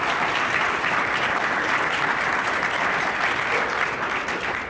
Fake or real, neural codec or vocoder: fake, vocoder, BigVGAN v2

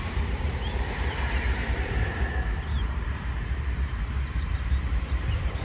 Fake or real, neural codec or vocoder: fake, vocoder, BigVGAN v2